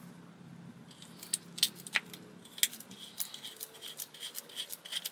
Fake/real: real